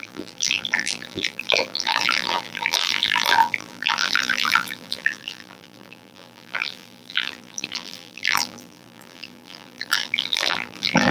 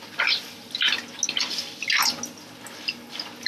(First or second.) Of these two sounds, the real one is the second